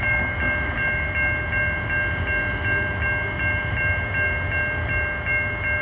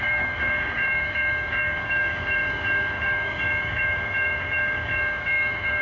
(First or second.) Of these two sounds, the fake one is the second